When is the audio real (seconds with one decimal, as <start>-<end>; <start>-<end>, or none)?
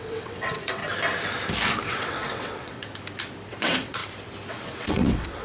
0.8-1.9; 2.9-3.5; 4.0-4.5